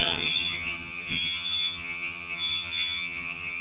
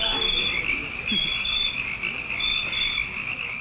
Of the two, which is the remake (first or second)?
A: first